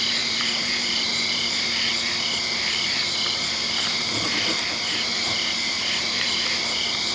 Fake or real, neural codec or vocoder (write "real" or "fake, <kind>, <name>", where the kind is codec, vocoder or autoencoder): fake, vocoder, BigVGAN v2